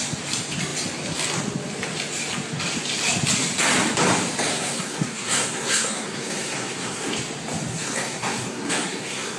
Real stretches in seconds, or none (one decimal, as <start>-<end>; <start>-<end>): 0.0-4.5; 7.1-7.7